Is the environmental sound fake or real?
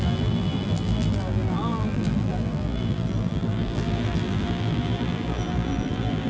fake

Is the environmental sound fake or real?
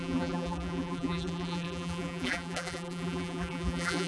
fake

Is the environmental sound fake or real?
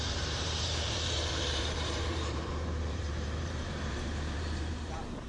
fake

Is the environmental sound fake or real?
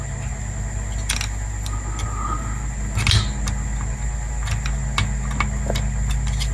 real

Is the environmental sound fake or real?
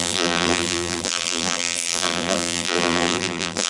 fake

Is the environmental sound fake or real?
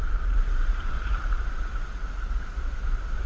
fake